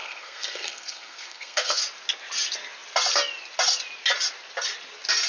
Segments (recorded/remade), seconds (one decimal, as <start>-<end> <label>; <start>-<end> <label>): 0.0-1.8 remade; 1.8-5.3 recorded